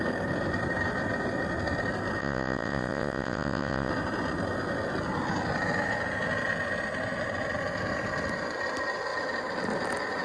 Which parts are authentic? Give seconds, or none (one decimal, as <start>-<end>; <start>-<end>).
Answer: 0.0-2.2; 3.9-10.2